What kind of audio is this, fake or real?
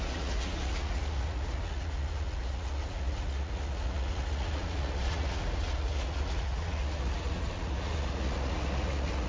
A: fake